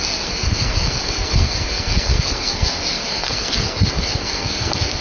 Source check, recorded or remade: remade